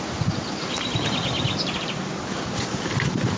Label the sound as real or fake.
real